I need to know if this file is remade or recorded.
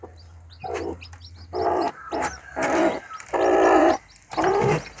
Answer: recorded